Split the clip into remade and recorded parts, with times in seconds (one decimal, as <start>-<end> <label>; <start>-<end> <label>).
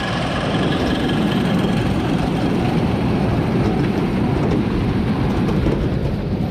0.0-6.5 remade